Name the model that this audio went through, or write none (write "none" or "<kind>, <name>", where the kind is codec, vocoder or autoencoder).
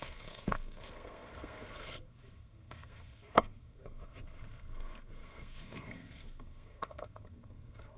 codec, SNAC